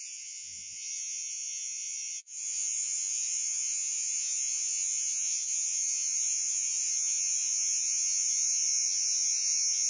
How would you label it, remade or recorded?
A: remade